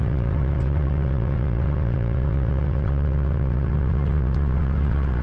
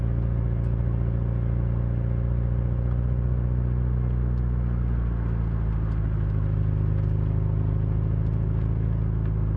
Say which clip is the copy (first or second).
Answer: first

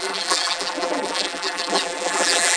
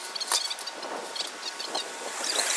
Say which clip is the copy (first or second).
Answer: first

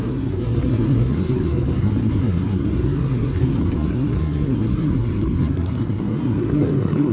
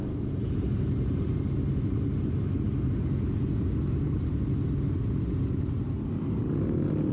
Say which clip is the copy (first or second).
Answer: first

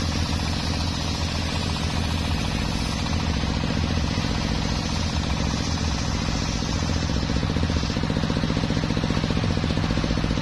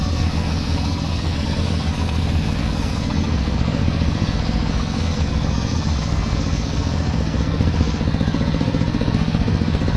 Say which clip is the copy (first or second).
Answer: second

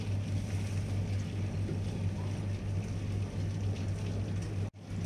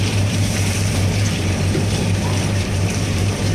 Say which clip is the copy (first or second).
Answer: second